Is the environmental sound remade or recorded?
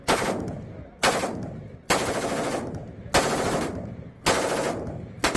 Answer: recorded